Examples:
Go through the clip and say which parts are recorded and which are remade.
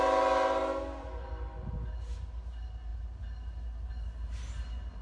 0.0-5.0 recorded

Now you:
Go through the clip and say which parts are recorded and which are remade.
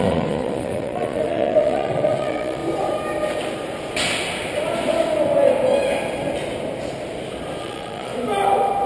0.0-2.6 remade; 2.6-7.6 recorded; 7.6-8.1 remade; 8.1-8.9 recorded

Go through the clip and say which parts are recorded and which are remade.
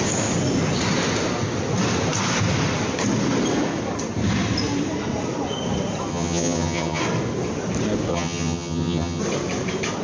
0.0-6.1 recorded; 6.1-7.0 remade; 7.0-8.1 recorded; 8.1-9.2 remade; 9.2-10.0 recorded